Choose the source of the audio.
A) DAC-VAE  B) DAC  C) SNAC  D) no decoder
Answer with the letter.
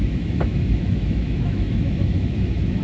A